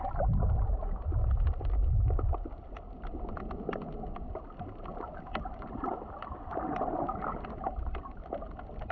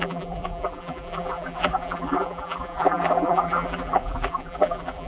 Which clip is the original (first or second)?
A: first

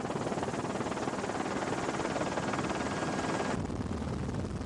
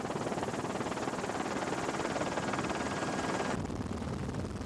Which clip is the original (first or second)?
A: first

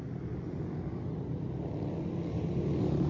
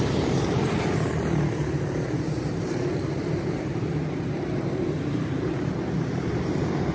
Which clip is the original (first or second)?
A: first